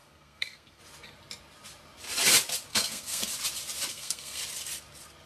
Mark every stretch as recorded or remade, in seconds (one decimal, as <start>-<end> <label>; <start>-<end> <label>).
0.0-0.8 remade; 0.8-2.7 recorded; 2.7-3.3 remade; 3.3-3.9 recorded; 3.9-4.4 remade; 4.4-5.3 recorded